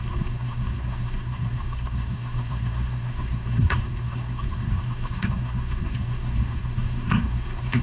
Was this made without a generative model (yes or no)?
no